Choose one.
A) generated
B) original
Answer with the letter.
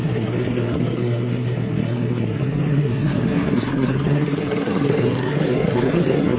A